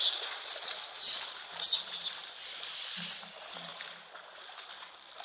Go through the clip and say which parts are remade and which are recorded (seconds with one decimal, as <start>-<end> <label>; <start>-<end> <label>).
0.0-5.2 recorded